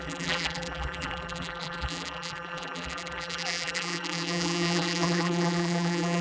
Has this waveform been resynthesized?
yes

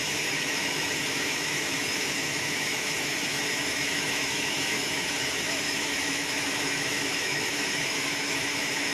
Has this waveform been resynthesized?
yes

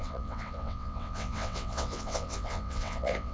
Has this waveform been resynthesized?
yes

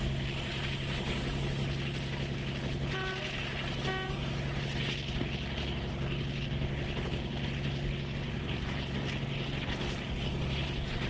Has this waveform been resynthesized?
no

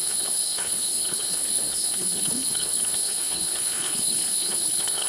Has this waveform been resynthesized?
yes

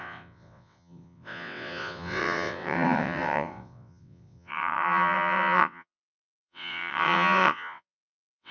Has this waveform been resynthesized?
yes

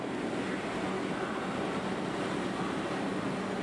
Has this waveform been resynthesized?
no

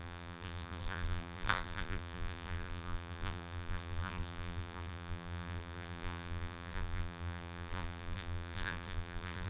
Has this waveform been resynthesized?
yes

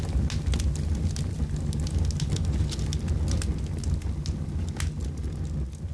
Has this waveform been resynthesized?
no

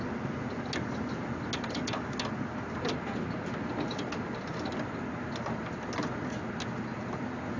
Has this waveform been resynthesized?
no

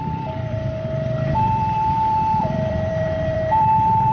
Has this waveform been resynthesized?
yes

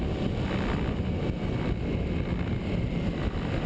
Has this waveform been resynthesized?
no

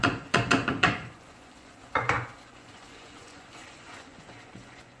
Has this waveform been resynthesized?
yes